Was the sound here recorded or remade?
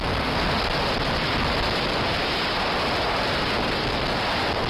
recorded